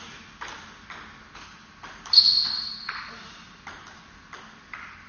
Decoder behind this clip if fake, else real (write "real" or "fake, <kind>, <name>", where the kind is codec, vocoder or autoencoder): real